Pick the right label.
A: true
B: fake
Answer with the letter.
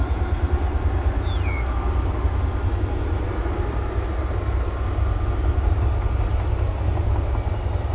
A